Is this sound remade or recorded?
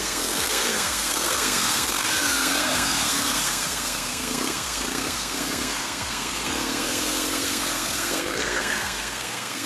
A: remade